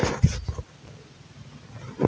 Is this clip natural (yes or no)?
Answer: yes